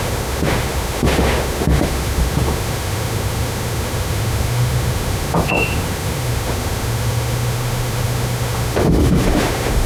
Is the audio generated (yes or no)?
yes